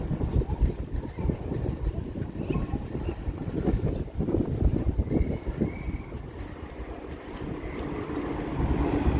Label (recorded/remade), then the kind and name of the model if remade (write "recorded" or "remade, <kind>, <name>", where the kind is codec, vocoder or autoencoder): remade, vocoder, BigVGAN v2